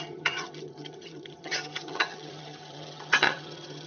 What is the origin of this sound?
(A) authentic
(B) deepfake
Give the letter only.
B